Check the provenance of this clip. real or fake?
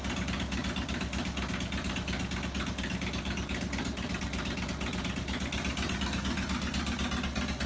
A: real